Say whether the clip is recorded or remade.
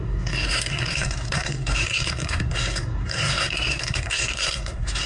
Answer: remade